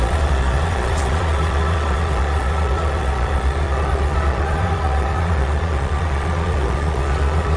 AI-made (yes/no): yes